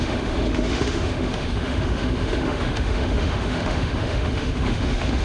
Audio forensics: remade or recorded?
remade